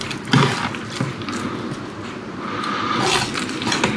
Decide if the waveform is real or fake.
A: real